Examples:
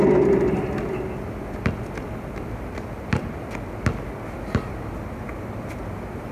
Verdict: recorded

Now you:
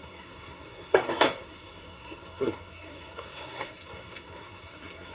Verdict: remade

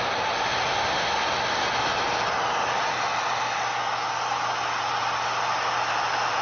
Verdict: recorded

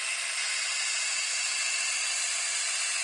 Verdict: recorded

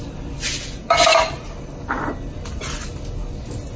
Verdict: recorded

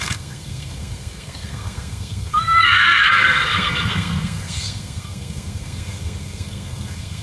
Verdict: remade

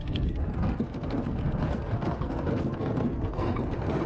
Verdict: remade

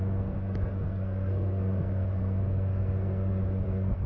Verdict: remade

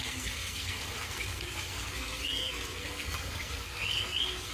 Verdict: remade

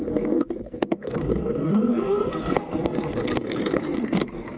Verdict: remade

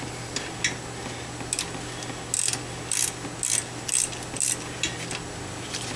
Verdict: recorded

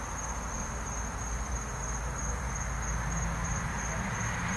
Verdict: recorded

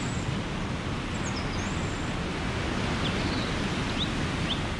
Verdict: recorded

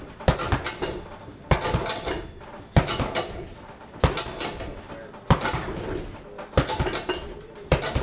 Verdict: recorded